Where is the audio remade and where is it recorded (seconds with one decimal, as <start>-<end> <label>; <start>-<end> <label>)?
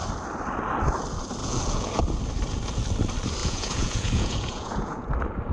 0.0-1.4 recorded; 1.4-2.0 remade; 2.0-3.4 recorded; 3.4-5.1 remade; 5.1-5.5 recorded